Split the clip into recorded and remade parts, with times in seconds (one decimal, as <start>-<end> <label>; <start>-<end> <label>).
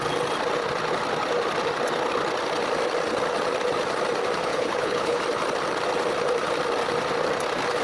0.0-4.5 recorded; 4.5-5.2 remade; 5.2-7.8 recorded